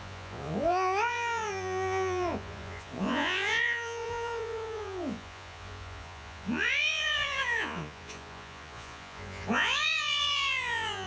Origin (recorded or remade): remade